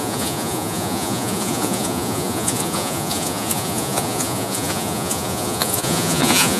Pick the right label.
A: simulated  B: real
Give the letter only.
A